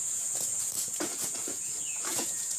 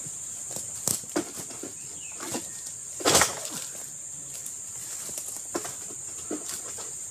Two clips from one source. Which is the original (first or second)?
second